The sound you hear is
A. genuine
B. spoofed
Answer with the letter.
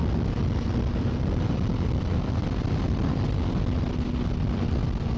A